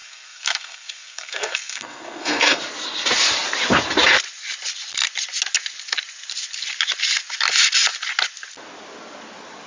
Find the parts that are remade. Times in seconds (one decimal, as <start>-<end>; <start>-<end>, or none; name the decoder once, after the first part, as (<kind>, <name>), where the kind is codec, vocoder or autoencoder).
0.0-2.6 (codec, SNAC)